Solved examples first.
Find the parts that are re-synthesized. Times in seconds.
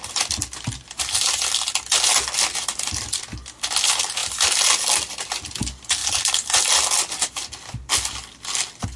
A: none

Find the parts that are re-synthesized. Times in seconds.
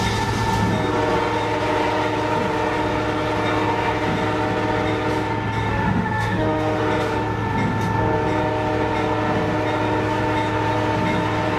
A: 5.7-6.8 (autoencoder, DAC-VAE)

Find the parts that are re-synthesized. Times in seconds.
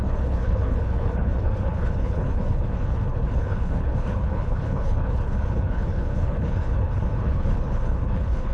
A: 0.0-8.5 (codec, HILCodec)